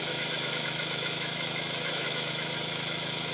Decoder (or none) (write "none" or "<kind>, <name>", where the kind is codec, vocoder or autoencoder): autoencoder, DAC-VAE